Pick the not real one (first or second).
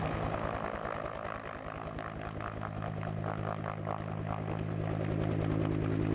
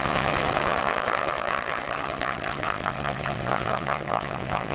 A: second